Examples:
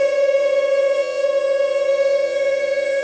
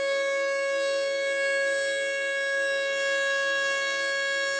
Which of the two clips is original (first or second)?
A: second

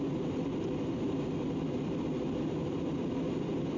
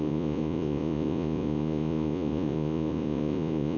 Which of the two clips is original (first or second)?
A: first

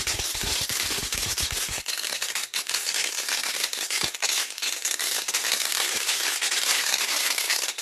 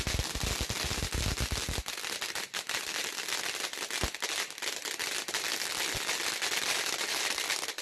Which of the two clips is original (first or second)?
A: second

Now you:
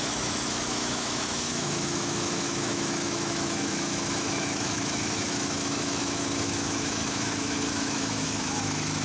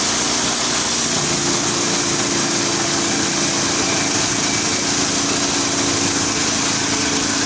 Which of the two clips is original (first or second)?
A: second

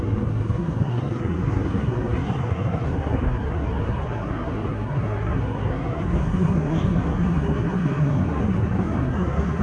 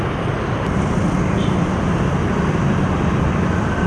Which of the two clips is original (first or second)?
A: second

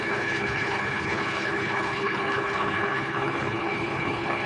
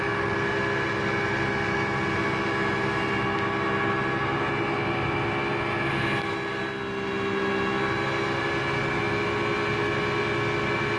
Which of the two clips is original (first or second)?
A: second